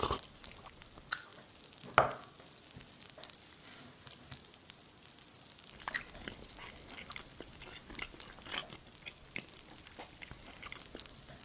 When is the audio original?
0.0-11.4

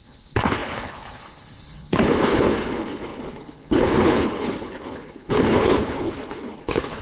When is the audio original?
none